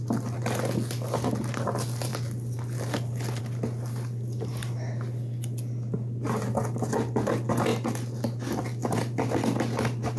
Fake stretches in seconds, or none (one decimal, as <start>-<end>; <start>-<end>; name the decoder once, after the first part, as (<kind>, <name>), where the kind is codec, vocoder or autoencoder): none